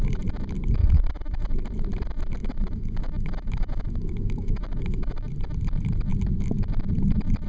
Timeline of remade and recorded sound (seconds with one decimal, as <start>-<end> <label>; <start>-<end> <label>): 0.0-0.8 recorded; 0.8-1.5 remade; 1.5-2.4 recorded; 2.4-5.2 remade; 5.2-7.5 recorded